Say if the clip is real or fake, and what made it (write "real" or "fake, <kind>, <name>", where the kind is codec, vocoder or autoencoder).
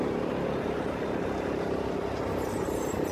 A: real